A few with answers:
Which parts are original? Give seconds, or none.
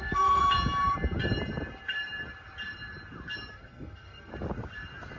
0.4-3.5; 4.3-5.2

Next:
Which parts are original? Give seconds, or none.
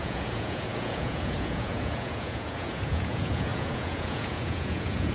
none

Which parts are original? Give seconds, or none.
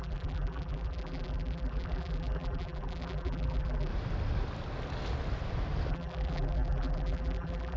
3.9-5.9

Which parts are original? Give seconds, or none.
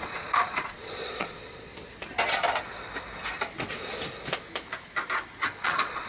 1.7-5.4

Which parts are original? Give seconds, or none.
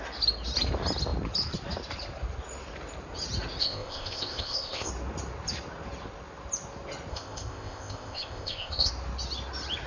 0.0-3.6; 4.9-7.1; 8.9-9.9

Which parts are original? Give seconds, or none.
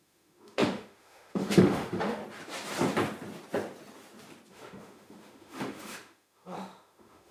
2.2-4.5